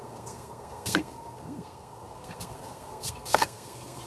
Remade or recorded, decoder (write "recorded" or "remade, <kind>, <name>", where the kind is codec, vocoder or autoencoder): remade, codec, SNAC